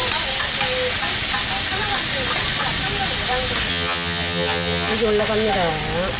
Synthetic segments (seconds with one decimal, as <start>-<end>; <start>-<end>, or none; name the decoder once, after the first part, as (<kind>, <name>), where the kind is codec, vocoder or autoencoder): 3.7-4.9 (vocoder, HiFi-GAN)